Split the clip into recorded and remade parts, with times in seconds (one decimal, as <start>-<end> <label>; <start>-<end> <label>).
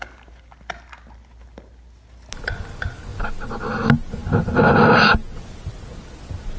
0.0-4.2 recorded; 4.2-5.1 remade; 5.1-6.6 recorded